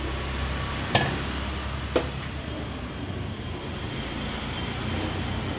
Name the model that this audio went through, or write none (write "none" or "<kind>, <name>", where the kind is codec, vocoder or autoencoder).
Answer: none